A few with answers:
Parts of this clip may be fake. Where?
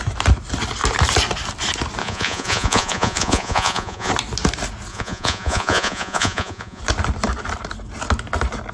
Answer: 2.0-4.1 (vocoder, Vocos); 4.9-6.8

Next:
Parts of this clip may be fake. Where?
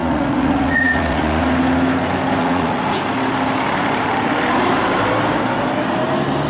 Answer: 0.0-1.4 (vocoder, Vocos); 2.4-3.0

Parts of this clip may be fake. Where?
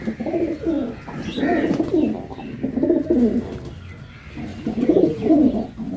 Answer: 0.8-1.9 (vocoder, Vocos); 4.5-6.0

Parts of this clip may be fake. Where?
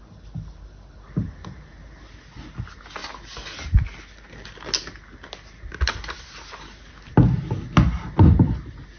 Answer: none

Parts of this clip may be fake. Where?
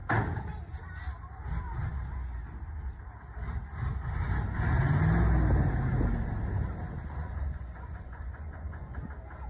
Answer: 7.2-9.0 (vocoder, Vocos)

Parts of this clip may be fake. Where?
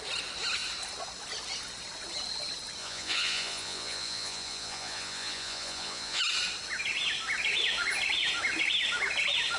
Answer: 2.8-6.2 (vocoder, Vocos)